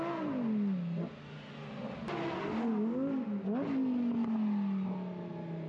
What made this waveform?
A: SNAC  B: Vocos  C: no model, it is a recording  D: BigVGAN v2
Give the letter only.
C